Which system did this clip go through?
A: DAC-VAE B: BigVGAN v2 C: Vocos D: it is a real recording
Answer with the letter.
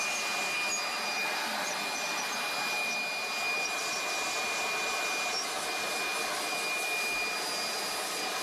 D